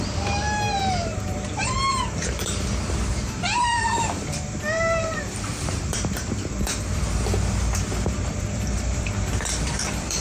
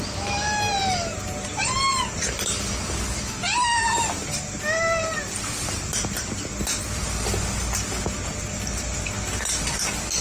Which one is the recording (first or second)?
second